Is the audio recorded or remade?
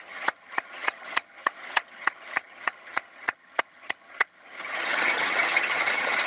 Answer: remade